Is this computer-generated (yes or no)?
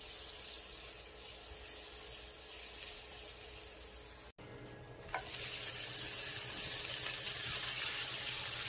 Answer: no